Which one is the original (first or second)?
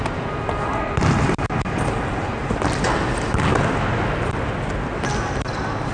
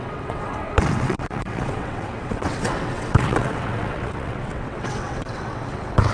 first